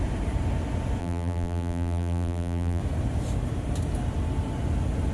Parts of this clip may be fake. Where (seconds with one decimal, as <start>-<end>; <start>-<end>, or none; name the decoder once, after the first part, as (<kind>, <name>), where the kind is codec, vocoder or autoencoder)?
1.0-2.8 (vocoder, BigVGAN v2)